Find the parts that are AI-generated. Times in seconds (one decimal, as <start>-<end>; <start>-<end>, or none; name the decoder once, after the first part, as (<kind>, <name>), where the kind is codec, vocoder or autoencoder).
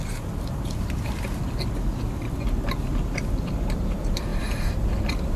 0.0-1.4 (vocoder, BigVGAN v2); 3.8-5.4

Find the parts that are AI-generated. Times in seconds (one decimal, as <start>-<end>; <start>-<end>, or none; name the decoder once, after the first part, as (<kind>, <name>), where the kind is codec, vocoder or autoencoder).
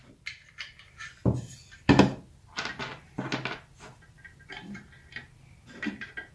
none